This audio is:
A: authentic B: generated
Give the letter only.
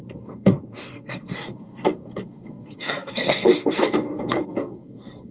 B